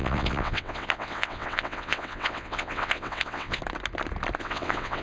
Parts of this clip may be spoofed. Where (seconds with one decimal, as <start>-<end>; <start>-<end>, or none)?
0.0-3.6; 4.4-5.0